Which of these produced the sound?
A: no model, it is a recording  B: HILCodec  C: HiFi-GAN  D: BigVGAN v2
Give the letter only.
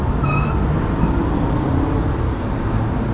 A